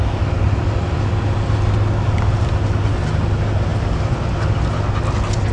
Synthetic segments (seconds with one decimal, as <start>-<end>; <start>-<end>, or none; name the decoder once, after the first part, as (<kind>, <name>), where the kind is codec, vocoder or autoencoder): none